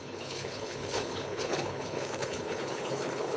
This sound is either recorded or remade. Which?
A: remade